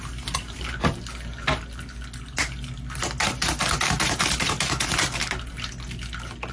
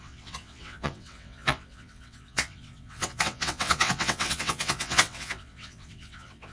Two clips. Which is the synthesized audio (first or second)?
second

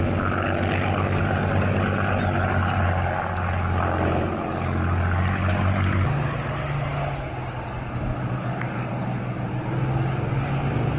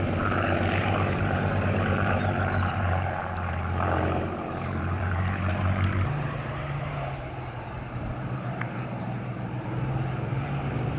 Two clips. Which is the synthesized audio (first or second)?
second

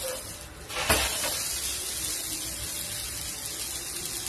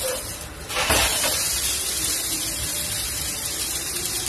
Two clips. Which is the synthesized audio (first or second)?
second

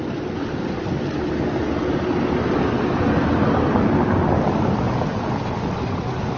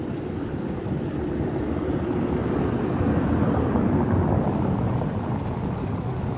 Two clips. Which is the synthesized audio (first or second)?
second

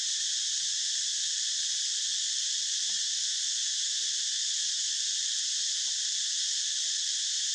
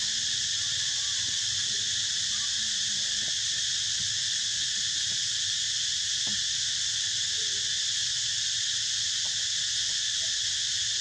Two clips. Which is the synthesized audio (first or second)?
first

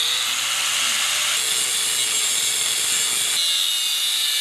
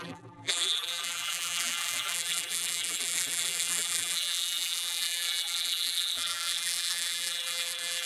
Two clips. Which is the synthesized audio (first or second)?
second